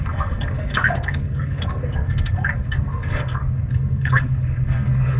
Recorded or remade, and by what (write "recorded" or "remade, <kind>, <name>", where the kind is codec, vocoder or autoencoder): remade, codec, SNAC